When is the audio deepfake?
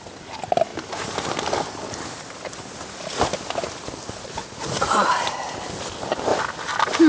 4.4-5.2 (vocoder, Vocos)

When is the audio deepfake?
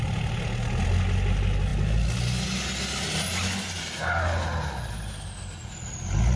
none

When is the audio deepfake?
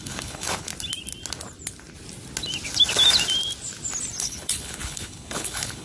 0.0-0.7 (codec, HILCodec); 4.2-5.8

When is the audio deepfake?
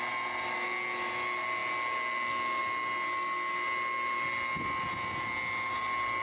none